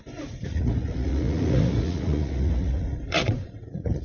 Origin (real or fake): fake